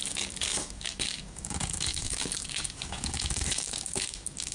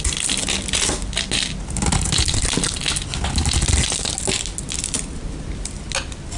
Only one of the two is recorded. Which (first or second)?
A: second